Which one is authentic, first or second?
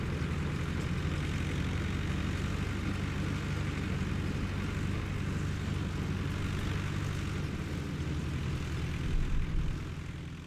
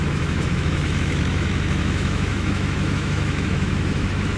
first